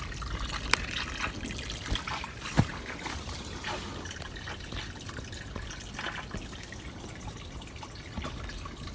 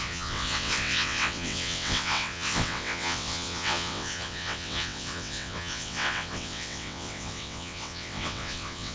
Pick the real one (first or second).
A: first